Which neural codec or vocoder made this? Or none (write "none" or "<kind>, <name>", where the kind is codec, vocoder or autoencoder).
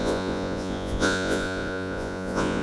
vocoder, Vocos